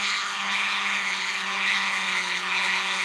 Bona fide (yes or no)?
no